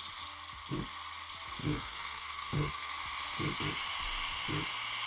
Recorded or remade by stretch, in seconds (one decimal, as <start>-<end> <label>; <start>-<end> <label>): 0.0-1.6 recorded; 1.6-2.9 remade; 2.9-5.1 recorded